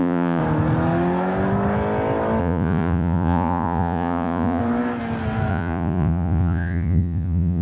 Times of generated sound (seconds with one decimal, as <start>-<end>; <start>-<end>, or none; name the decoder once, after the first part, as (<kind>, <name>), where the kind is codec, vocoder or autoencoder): 0.0-0.4 (vocoder, Vocos); 2.4-4.6; 5.5-7.6